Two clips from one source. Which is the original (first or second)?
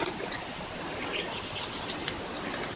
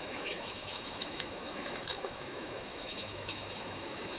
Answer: first